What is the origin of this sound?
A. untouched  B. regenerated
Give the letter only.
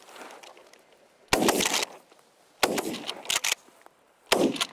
A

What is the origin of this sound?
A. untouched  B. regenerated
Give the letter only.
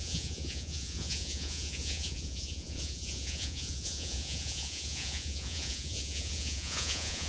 B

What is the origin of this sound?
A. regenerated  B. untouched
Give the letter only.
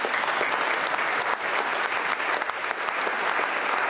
B